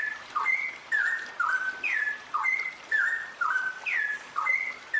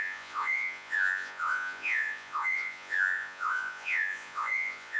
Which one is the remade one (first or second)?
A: second